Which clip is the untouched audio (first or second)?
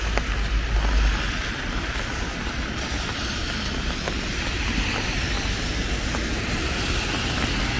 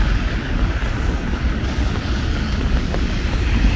first